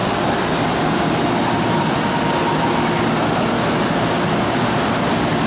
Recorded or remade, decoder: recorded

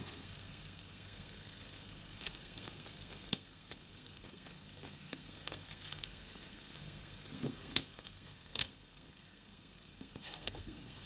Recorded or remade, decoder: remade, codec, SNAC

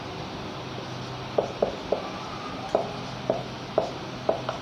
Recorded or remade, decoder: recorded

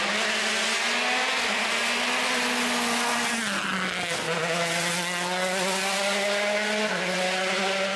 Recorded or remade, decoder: recorded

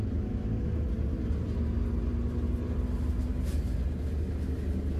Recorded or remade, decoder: recorded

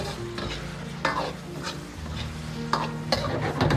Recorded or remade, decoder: recorded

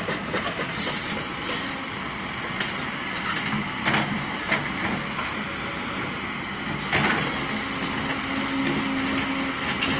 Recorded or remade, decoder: recorded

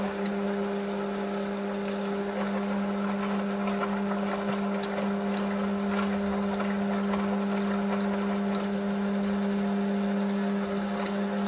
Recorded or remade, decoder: recorded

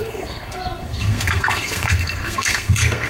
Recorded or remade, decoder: remade, codec, SNAC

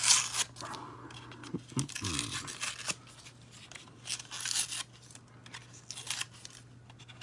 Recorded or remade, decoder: recorded